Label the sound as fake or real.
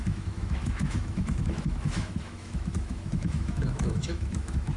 fake